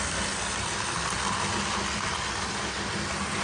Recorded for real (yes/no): yes